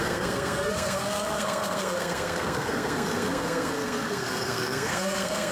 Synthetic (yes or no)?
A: yes